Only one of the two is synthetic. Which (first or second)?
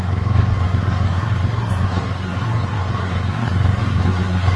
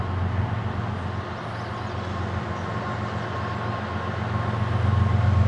first